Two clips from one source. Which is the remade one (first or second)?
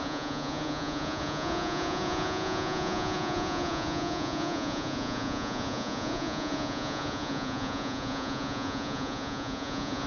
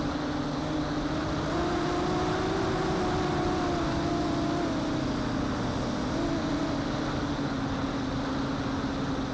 first